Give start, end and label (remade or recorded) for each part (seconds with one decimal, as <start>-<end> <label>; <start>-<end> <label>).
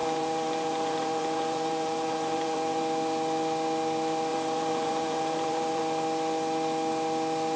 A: 0.0-2.8 remade; 2.8-4.3 recorded; 4.3-5.8 remade; 5.8-7.6 recorded